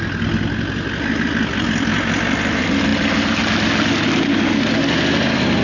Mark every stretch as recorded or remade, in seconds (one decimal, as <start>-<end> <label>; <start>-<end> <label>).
0.0-5.6 recorded